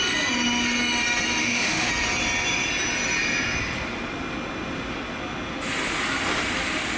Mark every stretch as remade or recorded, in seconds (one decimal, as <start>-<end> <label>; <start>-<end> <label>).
0.0-1.4 recorded; 1.4-1.9 remade; 1.9-7.0 recorded